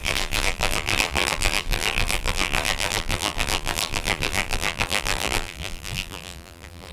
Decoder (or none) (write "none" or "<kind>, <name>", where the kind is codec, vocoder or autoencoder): vocoder, BigVGAN v2